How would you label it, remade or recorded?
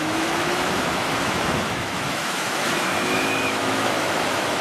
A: remade